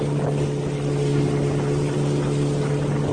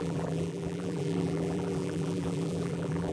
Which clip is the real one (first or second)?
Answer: first